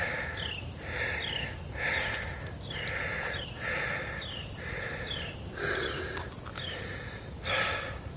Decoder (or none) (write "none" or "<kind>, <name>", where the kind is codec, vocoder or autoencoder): none